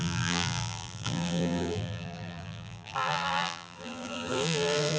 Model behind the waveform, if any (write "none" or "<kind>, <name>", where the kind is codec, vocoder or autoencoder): vocoder, BigVGAN v2